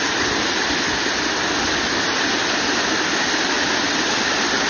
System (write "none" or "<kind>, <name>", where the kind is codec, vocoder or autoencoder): none